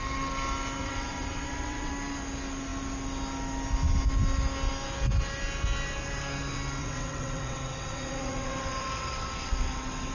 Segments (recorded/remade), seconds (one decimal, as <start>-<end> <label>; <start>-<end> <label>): 0.0-0.8 recorded; 0.8-1.9 remade; 1.9-6.8 recorded; 6.8-10.1 remade